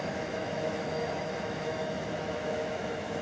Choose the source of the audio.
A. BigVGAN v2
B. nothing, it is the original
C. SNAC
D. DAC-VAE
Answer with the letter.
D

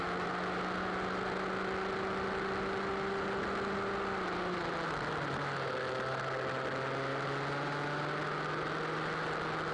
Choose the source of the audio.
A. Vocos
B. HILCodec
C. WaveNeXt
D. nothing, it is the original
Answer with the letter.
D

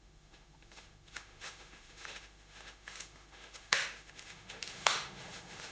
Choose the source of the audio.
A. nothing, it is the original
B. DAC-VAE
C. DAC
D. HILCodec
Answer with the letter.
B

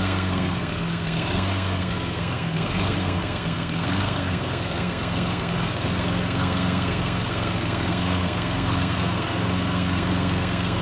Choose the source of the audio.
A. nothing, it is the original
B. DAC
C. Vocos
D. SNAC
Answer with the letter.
D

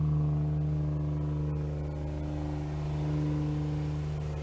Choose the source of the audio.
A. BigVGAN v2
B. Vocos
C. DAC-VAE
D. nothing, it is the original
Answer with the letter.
D